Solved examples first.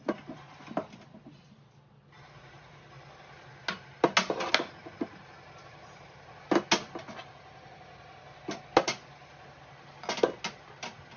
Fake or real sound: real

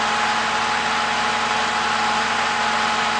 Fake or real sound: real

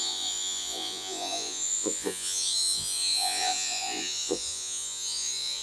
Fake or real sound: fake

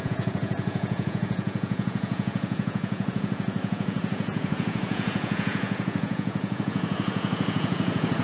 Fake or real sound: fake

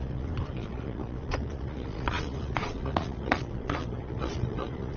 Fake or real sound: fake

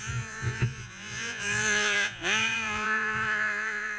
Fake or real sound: fake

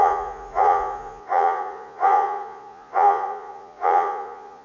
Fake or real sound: fake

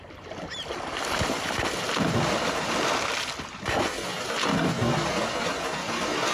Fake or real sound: real